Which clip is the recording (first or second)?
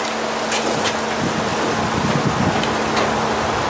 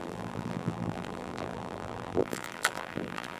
first